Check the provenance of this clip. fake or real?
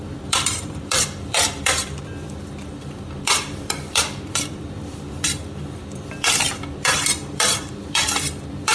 fake